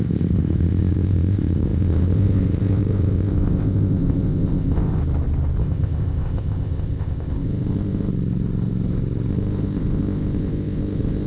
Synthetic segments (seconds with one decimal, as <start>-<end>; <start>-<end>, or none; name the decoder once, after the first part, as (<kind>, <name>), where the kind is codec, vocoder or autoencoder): 0.0-5.0 (codec, ZipCodec); 5.6-8.1; 9.3-11.3